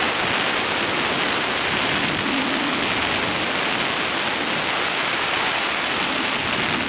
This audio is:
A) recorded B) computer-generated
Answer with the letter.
A